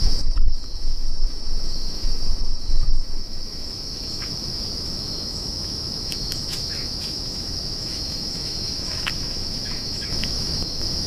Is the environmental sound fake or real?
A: fake